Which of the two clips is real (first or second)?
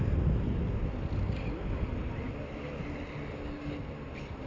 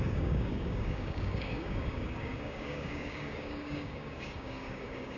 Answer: first